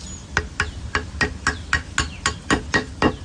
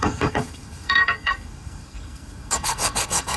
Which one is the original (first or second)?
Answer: first